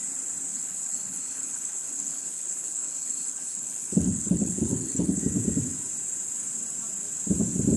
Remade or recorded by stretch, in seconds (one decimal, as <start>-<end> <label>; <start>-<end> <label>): 0.0-0.5 recorded; 0.5-5.2 remade; 5.2-7.8 recorded